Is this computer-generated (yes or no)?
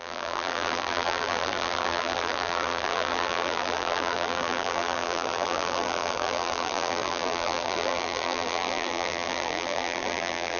yes